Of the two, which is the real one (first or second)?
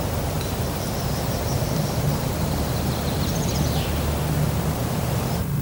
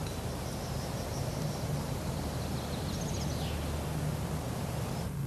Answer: second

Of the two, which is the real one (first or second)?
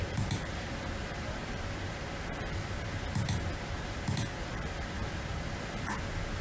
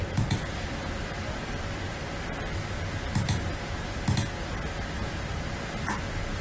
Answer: second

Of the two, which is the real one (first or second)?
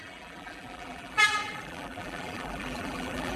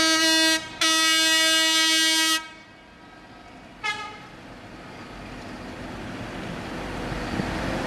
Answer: second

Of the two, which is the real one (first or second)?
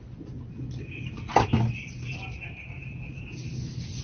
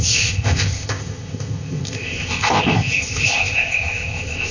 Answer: first